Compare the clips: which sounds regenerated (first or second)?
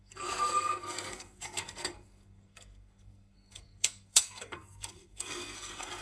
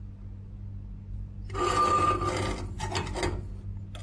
first